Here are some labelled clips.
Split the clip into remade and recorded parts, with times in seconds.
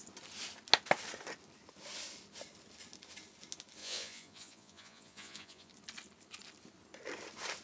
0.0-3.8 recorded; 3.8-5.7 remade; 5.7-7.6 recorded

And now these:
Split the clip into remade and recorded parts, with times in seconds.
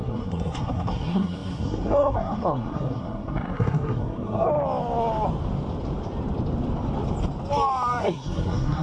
0.0-4.5 remade; 4.5-8.0 recorded; 8.0-8.8 remade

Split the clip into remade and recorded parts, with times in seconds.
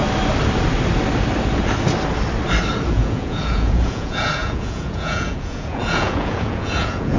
0.0-2.9 recorded; 2.9-7.2 remade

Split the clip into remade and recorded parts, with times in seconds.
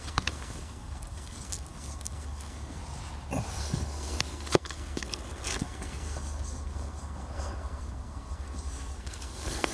0.0-2.8 remade; 2.8-3.5 recorded; 3.5-9.7 remade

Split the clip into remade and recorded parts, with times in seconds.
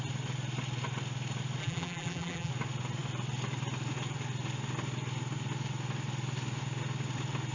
0.0-1.6 recorded; 1.6-2.5 remade; 2.5-7.5 recorded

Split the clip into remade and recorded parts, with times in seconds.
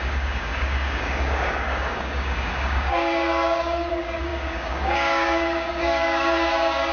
0.0-6.9 remade